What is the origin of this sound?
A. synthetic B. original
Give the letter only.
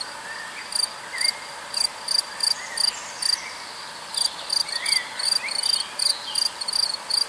B